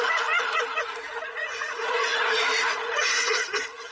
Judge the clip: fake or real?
fake